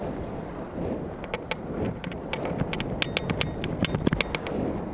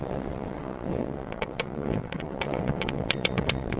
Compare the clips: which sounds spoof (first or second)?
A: second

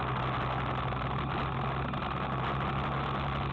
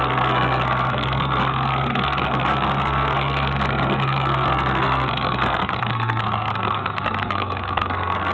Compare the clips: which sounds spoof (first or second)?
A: second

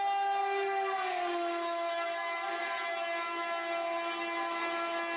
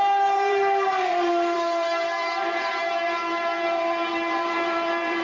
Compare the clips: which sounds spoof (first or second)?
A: second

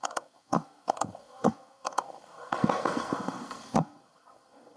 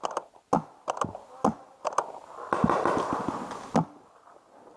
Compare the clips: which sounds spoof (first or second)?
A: first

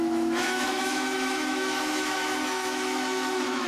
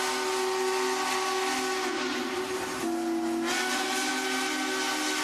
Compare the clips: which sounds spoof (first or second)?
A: first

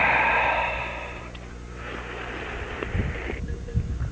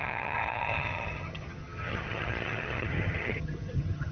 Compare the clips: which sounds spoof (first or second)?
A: second